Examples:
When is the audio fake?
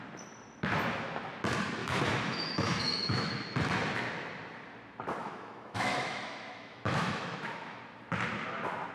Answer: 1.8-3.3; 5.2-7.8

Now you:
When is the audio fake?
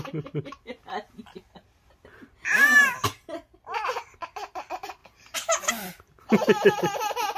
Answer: none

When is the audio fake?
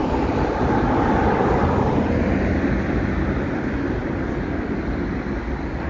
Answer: none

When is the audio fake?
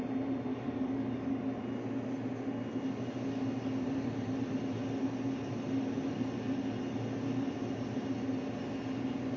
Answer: 0.5-1.4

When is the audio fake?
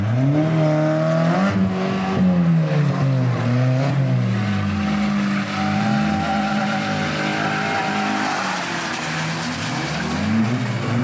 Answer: none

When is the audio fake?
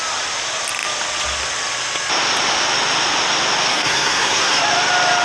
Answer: 3.7-4.6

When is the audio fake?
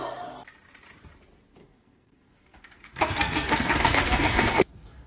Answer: 1.6-5.1